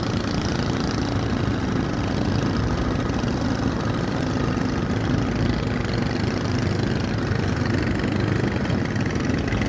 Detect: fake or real real